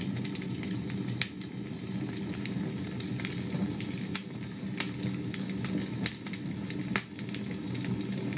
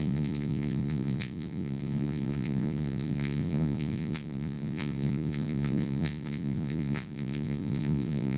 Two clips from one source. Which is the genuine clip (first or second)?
first